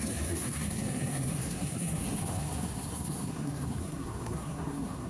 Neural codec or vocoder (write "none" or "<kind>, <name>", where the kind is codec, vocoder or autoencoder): codec, SNAC